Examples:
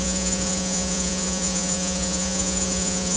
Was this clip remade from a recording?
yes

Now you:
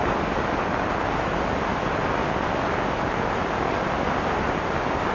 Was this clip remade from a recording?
no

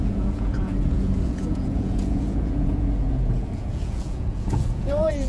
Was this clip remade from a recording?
yes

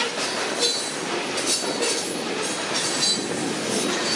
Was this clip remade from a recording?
no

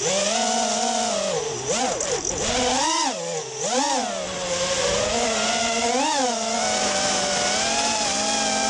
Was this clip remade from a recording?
no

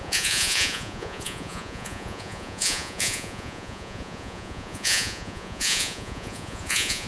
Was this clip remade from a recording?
yes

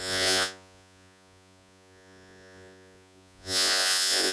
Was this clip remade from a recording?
yes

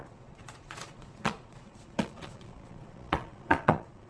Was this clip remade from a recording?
yes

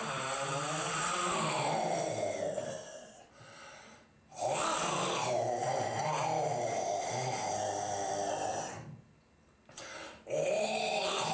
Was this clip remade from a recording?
no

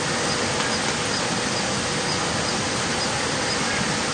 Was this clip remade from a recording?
no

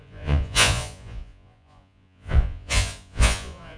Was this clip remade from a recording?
yes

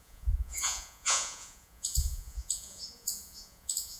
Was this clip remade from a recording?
yes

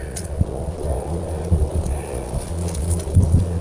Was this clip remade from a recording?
yes